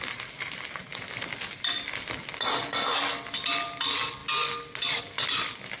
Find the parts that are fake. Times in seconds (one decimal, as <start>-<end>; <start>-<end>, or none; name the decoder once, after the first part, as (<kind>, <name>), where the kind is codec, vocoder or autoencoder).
none